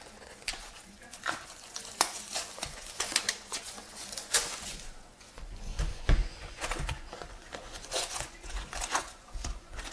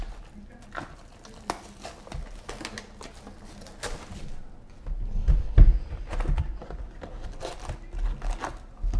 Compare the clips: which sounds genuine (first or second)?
second